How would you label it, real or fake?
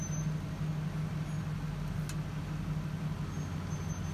real